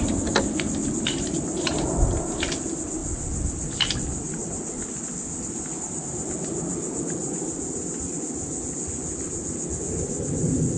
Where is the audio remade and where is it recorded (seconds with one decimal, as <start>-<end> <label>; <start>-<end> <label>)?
0.0-10.8 recorded